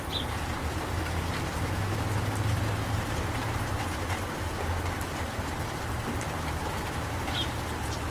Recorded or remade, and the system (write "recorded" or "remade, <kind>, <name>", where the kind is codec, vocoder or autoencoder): remade, vocoder, BigVGAN v2